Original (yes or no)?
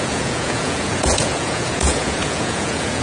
no